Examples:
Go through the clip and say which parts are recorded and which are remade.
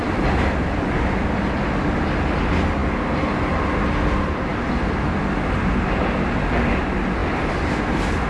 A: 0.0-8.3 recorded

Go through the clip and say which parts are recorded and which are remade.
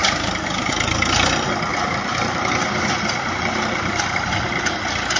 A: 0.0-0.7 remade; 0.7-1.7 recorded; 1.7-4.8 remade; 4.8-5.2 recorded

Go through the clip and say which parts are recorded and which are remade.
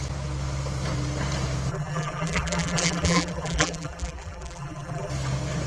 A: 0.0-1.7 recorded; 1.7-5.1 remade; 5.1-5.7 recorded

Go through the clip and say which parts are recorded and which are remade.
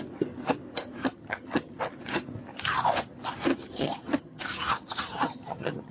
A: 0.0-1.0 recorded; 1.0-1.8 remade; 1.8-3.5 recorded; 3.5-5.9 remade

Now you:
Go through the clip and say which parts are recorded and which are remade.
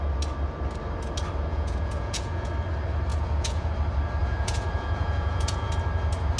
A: 0.0-1.5 recorded; 1.5-2.5 remade; 2.5-3.1 recorded; 3.1-3.7 remade; 3.7-4.2 recorded; 4.2-5.7 remade; 5.7-6.4 recorded